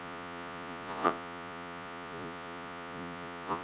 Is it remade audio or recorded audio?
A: remade